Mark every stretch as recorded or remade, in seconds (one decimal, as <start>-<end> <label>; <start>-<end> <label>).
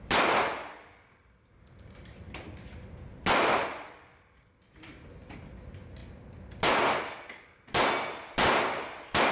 0.0-9.3 recorded